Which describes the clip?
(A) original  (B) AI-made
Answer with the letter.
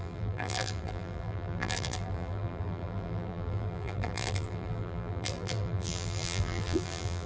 B